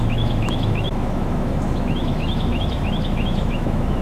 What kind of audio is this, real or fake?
fake